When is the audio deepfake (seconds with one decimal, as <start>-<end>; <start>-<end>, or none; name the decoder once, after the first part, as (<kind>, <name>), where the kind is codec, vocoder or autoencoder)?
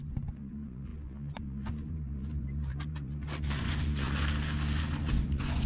0.0-4.2 (vocoder, Vocos); 4.8-5.7